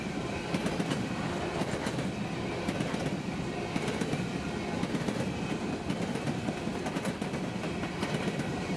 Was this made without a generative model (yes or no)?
yes